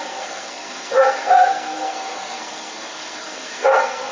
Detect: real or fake fake